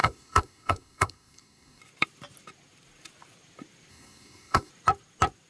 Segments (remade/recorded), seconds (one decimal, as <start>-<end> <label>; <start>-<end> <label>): 0.0-1.8 remade; 1.8-3.9 recorded; 3.9-4.7 remade; 4.7-5.5 recorded